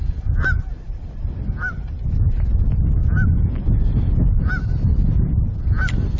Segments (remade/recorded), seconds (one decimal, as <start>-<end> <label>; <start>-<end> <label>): 0.0-6.2 recorded